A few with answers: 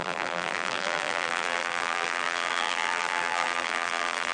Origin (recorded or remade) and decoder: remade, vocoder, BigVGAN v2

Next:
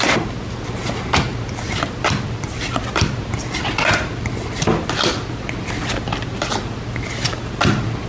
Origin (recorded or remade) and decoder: remade, vocoder, BigVGAN v2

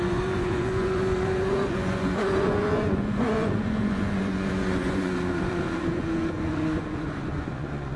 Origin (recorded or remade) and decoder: remade, vocoder, Vocos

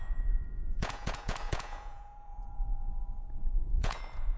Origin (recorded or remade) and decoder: remade, vocoder, Vocos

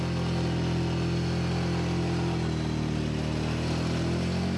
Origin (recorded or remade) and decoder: recorded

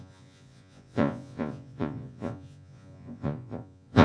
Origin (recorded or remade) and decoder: remade, vocoder, Vocos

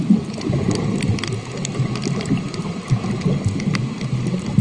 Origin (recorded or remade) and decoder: recorded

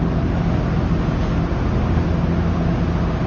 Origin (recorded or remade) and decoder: recorded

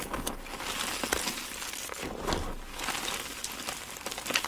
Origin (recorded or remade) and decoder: recorded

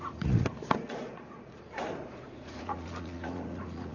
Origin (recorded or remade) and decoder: remade, vocoder, Vocos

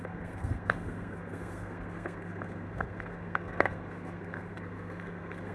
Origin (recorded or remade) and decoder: remade, codec, SNAC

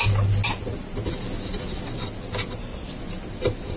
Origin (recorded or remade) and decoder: recorded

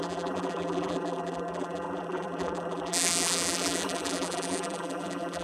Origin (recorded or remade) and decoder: remade, vocoder, BigVGAN v2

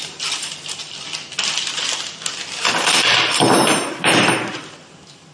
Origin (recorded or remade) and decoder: recorded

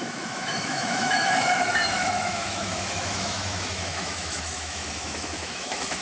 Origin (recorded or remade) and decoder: remade, autoencoder, DAC-VAE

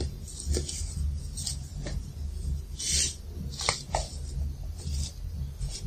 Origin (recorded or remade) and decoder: recorded